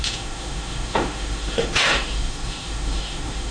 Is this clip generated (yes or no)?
yes